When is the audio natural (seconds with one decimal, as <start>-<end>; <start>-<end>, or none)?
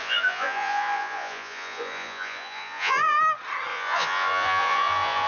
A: 3.2-3.7